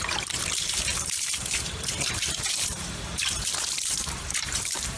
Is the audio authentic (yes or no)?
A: no